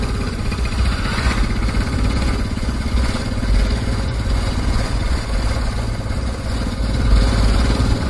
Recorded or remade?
remade